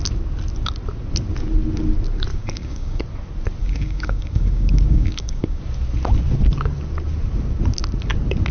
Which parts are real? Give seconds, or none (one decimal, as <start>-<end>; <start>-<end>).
0.0-2.3; 3.0-3.6; 5.6-8.5